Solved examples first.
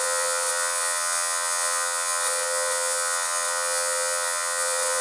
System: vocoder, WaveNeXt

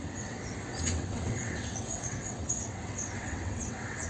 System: vocoder, WaveNeXt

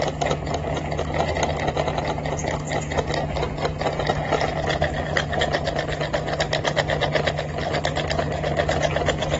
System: none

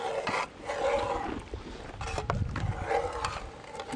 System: none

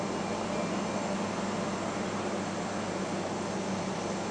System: none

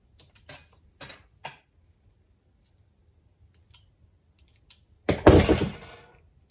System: none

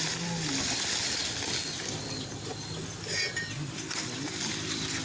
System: none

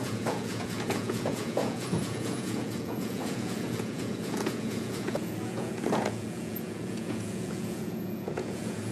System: vocoder, Vocos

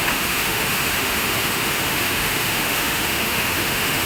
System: autoencoder, DAC-VAE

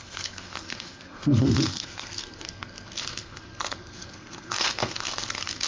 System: codec, SNAC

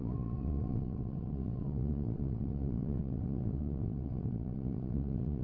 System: vocoder, WaveNeXt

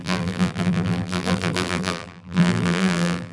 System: vocoder, BigVGAN v2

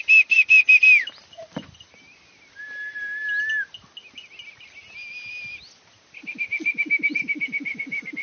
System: none